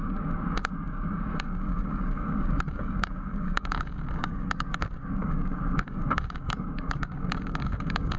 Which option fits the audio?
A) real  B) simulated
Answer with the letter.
B